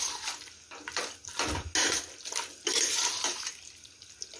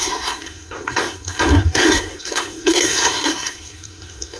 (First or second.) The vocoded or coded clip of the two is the second